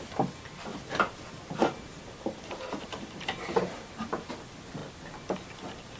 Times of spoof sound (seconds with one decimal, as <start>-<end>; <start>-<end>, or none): 0.7-4.3